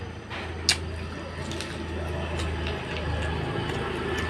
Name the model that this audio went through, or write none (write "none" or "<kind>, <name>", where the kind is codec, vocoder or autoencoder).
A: none